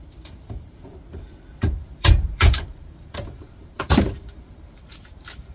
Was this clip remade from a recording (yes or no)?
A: yes